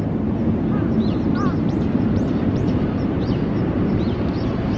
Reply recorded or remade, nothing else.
remade